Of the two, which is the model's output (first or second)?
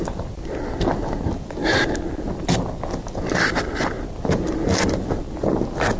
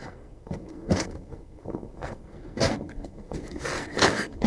second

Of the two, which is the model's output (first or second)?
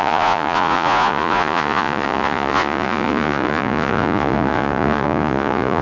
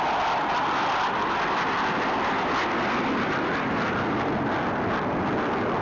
first